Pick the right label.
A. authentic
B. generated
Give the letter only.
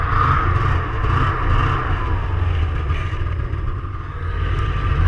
A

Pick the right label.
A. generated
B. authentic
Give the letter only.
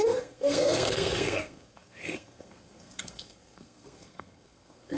A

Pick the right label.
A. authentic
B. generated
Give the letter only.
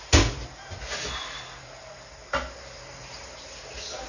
A